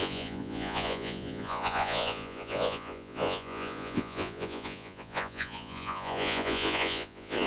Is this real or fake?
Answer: fake